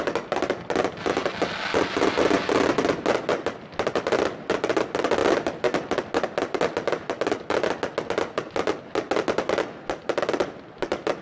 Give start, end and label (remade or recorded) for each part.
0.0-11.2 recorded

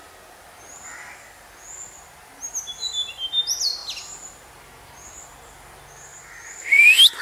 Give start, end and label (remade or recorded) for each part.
0.0-7.2 recorded

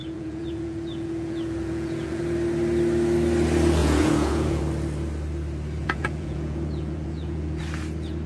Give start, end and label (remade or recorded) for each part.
0.0-2.2 remade; 2.2-3.8 recorded; 3.8-4.6 remade; 4.6-5.8 recorded; 5.8-7.6 remade; 7.6-8.3 recorded

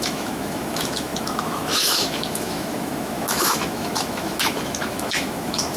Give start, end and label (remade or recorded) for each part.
0.0-5.8 remade

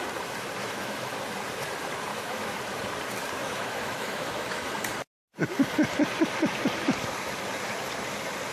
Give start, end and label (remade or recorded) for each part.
0.0-0.6 recorded; 0.6-1.2 remade; 1.2-2.1 recorded; 2.1-2.6 remade; 2.6-3.4 recorded; 3.4-4.7 remade; 4.7-8.5 recorded